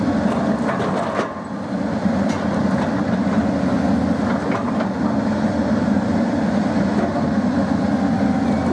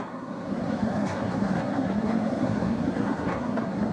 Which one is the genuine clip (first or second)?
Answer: first